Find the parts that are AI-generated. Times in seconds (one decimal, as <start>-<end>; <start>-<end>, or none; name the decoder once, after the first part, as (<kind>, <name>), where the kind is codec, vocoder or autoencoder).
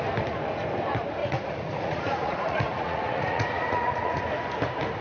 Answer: 1.2-4.2 (vocoder, Vocos)